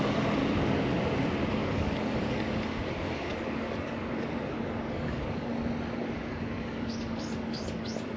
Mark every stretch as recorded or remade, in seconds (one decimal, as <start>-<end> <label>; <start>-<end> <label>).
0.0-0.4 remade; 0.4-1.5 recorded; 1.5-5.5 remade; 5.5-6.0 recorded; 6.0-8.2 remade